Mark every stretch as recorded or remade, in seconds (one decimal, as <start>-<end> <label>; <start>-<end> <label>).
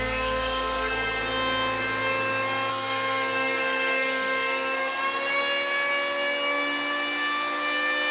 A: 0.0-1.2 remade; 1.2-2.7 recorded; 2.7-5.0 remade; 5.0-8.1 recorded